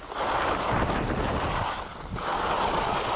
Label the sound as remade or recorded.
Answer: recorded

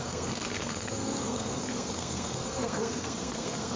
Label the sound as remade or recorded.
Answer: remade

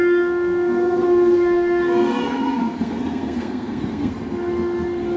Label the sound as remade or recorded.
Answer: remade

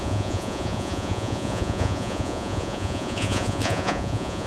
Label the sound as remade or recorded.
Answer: remade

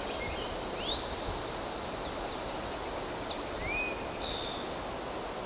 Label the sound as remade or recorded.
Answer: recorded